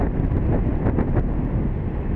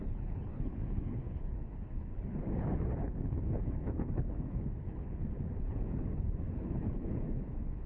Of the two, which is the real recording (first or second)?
first